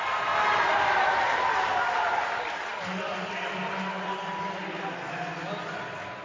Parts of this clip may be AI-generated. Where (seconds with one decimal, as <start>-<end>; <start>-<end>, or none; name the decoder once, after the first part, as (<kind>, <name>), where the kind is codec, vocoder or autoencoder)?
none